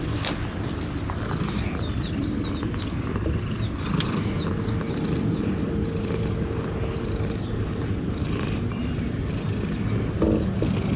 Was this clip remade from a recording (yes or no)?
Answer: no